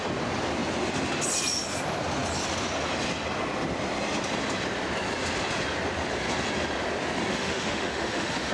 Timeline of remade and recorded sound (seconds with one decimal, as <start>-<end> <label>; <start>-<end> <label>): 0.0-7.3 recorded; 7.3-8.5 remade